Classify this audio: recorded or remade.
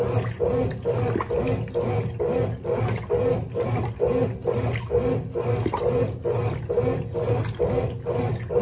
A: recorded